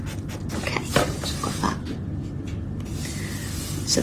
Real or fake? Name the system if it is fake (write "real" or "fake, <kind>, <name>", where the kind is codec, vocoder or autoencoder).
real